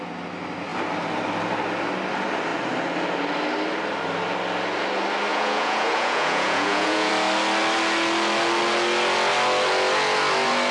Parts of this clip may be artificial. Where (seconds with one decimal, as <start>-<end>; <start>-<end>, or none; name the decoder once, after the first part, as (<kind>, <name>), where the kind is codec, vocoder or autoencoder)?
5.3-7.1 (vocoder, Vocos)

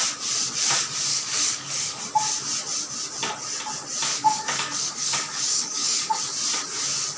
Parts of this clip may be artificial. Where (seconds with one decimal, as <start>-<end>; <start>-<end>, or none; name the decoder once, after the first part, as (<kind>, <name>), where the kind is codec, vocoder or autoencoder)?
1.1-2.0 (codec, DAC); 4.1-6.2

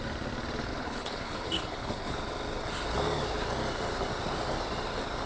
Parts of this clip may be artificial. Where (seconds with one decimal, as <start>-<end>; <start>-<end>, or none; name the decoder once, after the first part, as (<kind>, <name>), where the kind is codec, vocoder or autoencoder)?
0.7-2.2 (codec, HILCodec)